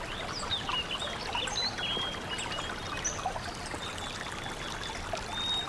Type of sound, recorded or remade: recorded